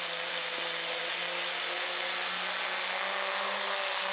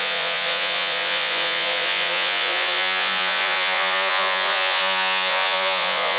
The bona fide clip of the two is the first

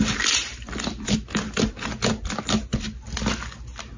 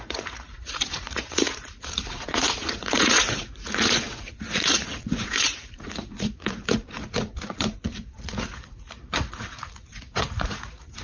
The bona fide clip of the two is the first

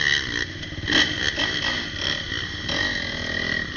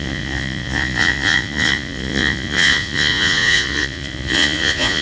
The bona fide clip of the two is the first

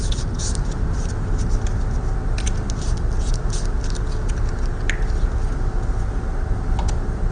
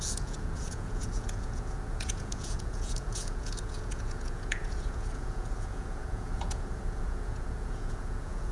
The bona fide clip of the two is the first